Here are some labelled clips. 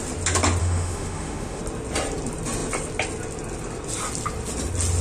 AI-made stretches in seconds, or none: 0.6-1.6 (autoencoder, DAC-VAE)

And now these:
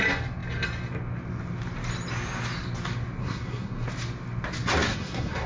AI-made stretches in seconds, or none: 3.2-3.9 (codec, SNAC); 4.9-5.5

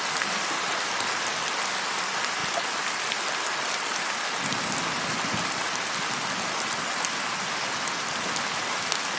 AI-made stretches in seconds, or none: none

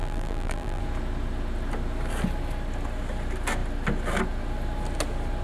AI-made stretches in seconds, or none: 0.0-0.8 (vocoder, BigVGAN v2)

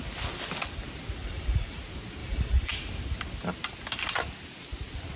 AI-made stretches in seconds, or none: 1.2-1.8 (vocoder, BigVGAN v2); 2.2-2.7